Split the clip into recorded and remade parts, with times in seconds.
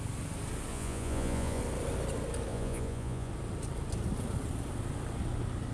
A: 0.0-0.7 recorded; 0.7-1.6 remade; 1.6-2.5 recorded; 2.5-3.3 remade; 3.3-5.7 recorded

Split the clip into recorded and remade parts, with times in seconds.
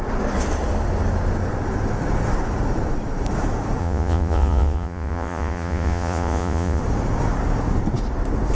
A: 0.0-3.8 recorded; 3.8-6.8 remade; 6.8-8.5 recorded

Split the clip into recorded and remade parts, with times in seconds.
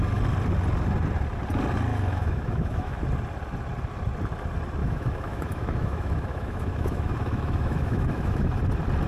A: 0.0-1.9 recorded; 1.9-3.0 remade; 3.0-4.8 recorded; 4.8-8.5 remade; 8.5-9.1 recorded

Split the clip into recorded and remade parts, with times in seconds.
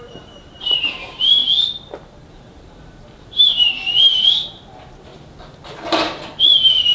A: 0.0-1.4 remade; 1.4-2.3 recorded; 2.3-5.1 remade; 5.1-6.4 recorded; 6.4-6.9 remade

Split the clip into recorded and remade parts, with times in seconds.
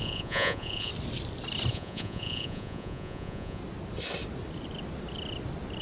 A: 0.0-0.9 remade; 0.9-1.7 recorded; 1.7-3.6 remade; 3.6-5.8 recorded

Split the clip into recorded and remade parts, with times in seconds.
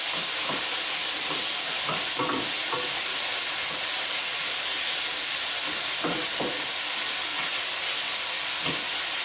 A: 0.0-1.0 recorded; 1.0-2.1 remade; 2.1-3.1 recorded; 3.1-6.7 remade; 6.7-9.2 recorded